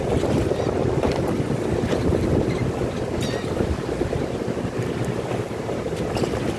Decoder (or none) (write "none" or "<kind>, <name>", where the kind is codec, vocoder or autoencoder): none